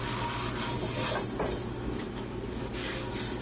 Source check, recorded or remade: recorded